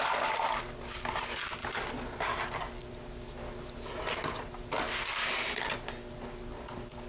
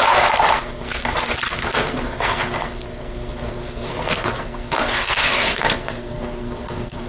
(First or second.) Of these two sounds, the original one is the first